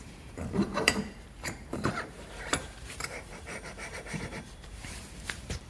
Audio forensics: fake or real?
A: fake